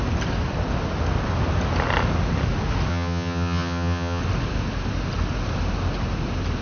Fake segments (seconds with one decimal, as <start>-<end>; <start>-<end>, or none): 2.9-4.2